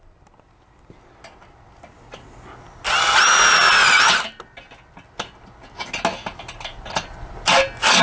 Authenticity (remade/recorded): recorded